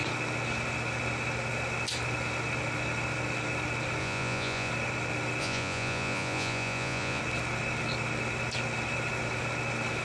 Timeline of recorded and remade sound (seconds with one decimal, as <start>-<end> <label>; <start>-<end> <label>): 0.0-4.0 recorded; 4.0-4.7 remade; 4.7-5.4 recorded; 5.4-7.2 remade; 7.2-10.0 recorded